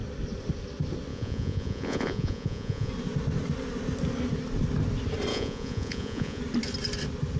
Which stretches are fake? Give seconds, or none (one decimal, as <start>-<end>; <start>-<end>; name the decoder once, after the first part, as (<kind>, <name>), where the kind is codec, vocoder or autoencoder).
1.1-2.9 (vocoder, Vocos); 5.3-6.4